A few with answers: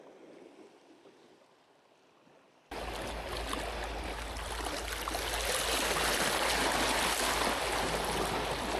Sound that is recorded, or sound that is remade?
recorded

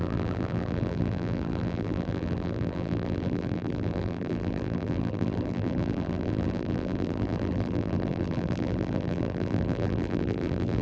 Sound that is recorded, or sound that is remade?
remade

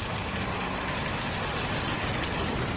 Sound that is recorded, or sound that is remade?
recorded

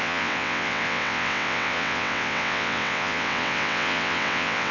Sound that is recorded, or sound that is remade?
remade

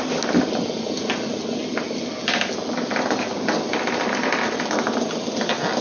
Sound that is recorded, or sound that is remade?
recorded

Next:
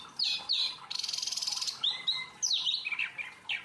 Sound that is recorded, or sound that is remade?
recorded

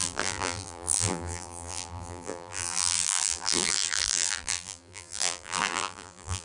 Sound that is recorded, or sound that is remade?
remade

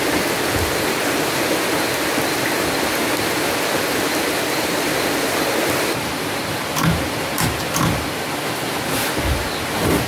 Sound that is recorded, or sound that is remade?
recorded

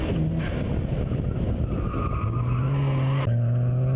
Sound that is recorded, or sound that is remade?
recorded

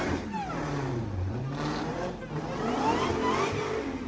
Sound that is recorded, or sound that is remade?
remade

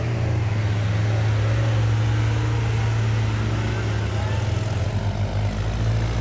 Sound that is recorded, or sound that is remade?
recorded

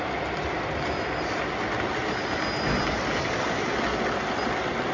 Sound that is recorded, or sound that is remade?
recorded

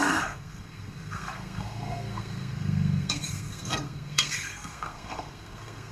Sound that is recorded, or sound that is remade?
remade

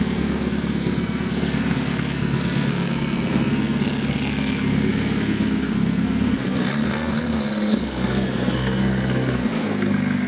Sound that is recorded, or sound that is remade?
remade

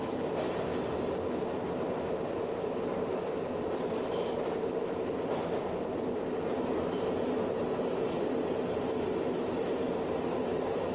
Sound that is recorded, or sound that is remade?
recorded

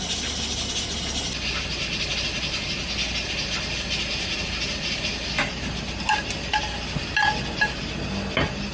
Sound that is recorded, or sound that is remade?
recorded